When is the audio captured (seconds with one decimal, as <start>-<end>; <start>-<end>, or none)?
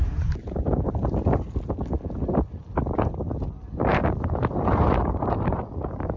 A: 1.0-3.9; 5.6-6.2